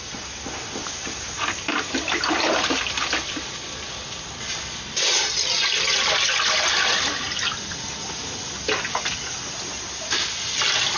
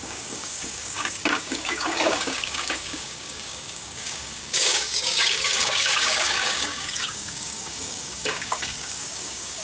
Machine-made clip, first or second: second